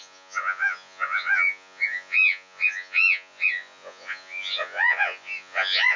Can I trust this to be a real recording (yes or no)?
no